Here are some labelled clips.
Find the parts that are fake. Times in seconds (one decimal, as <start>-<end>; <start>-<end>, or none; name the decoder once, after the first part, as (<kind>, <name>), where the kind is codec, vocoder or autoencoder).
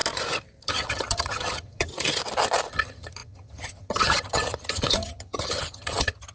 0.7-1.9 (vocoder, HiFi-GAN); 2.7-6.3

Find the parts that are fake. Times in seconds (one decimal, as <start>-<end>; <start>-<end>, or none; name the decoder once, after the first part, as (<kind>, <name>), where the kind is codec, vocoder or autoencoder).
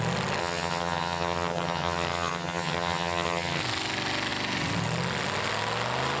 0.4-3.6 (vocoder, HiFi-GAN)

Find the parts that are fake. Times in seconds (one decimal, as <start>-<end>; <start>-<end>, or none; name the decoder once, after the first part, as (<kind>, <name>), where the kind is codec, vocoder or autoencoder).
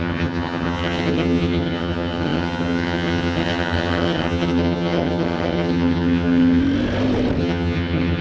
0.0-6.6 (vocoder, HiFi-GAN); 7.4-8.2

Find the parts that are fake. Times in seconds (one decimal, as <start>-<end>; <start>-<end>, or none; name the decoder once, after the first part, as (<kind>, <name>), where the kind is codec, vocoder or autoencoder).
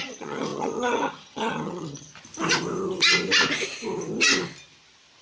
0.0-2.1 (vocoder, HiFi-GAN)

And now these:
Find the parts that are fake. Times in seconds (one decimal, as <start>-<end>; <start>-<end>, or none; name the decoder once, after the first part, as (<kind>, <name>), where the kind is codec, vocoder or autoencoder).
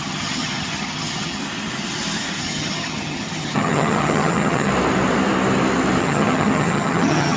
0.0-1.4 (vocoder, HiFi-GAN); 2.4-4.7; 6.0-7.4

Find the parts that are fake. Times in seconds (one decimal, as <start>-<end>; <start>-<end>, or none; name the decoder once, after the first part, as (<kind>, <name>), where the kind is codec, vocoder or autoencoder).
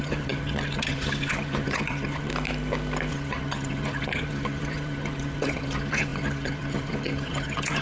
0.0-2.3 (vocoder, HiFi-GAN); 3.1-7.8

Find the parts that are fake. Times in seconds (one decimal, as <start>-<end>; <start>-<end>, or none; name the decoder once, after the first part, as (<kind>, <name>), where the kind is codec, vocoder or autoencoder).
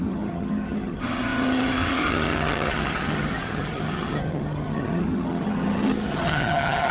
0.0-6.9 (vocoder, HiFi-GAN)